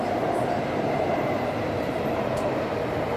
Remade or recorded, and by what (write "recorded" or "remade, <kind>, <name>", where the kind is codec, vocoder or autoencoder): remade, vocoder, BigVGAN v2